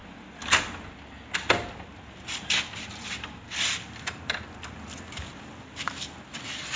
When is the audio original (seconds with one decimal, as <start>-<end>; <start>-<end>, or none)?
0.0-6.8